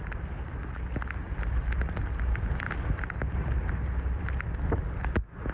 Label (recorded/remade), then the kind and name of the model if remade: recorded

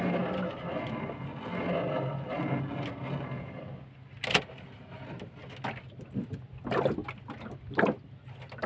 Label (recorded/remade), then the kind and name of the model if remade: recorded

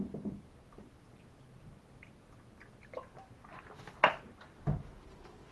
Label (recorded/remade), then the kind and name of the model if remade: recorded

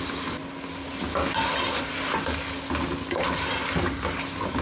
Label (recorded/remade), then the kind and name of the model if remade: recorded